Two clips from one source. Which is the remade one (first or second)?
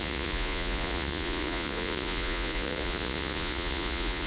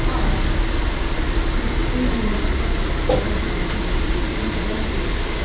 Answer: first